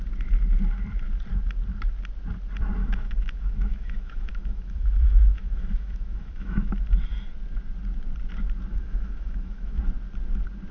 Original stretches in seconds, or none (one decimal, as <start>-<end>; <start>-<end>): 0.0-2.8; 6.7-8.7; 9.8-10.7